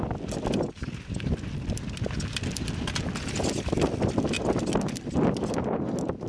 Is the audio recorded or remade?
recorded